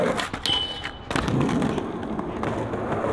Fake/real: real